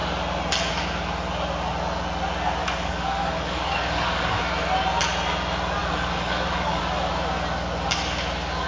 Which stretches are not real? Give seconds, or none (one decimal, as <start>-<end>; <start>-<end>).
2.6-4.4; 5.8-6.8